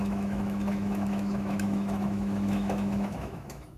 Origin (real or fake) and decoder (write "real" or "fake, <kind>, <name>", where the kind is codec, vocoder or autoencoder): fake, autoencoder, DAC-VAE